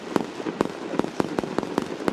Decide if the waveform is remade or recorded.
remade